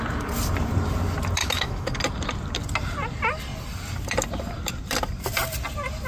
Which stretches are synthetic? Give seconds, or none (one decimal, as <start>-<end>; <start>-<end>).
1.4-2.0